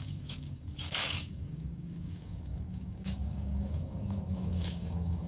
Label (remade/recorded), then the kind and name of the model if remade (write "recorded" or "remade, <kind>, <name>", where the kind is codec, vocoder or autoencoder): remade, codec, DAC